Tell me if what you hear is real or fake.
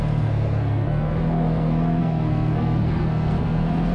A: fake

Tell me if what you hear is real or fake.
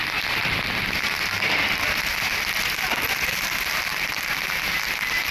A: real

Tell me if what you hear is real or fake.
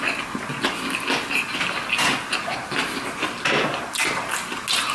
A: real